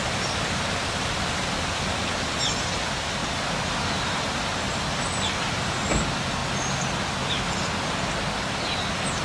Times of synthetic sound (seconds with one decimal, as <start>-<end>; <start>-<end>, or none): none